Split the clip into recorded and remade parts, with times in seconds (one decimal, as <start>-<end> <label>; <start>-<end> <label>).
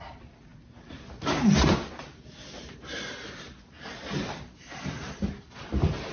0.0-0.5 remade; 0.5-4.2 recorded; 4.2-6.1 remade